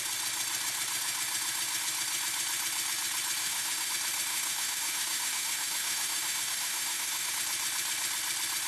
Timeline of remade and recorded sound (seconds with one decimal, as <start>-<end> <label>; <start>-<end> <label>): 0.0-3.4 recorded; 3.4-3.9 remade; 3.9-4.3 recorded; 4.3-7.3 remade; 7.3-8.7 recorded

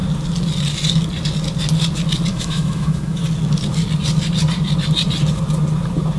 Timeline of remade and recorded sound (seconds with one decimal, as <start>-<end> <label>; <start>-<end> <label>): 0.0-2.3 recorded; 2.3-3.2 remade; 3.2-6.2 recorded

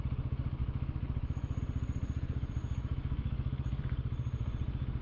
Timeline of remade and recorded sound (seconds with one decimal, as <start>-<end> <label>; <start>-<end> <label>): 0.0-0.6 recorded; 0.6-1.6 remade; 1.6-2.6 recorded; 2.6-3.8 remade; 3.8-5.0 recorded

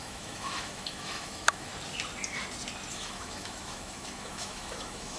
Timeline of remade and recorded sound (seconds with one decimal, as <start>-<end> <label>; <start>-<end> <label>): 0.0-1.7 remade; 1.7-2.9 recorded; 2.9-5.2 remade

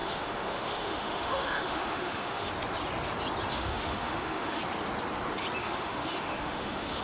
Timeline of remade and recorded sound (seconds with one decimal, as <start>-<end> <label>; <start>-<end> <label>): 0.0-2.5 remade; 2.5-3.5 recorded; 3.5-4.6 remade; 4.6-5.6 recorded; 5.6-7.0 remade

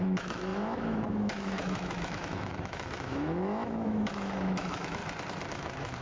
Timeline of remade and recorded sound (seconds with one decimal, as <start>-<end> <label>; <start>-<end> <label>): 0.0-5.0 remade; 5.0-5.5 recorded; 5.5-6.0 remade

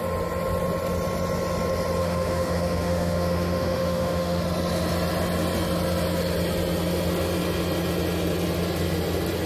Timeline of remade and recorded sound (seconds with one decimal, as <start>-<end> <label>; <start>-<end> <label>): 0.0-2.0 recorded; 2.0-4.4 remade; 4.4-9.5 recorded